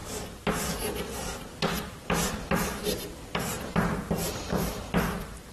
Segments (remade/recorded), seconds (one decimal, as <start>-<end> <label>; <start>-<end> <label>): 0.0-2.7 recorded; 2.7-5.5 remade